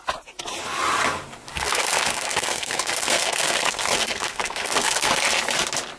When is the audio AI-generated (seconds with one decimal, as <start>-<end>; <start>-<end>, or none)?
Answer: 1.5-5.1